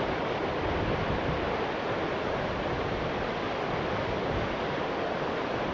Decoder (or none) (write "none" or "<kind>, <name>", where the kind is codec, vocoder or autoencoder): none